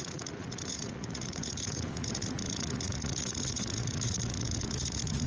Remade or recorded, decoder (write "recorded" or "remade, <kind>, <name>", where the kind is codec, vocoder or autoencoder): remade, vocoder, Vocos